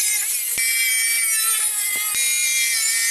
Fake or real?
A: real